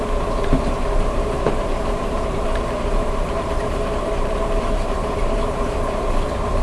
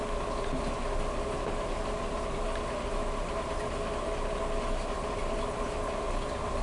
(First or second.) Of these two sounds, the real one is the second